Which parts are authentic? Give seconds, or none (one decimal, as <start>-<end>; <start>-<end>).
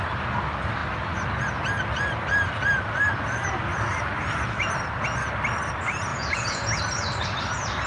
0.0-6.1; 6.8-7.9